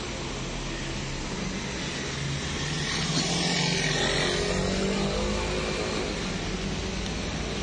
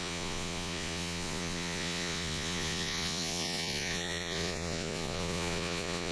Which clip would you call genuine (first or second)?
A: first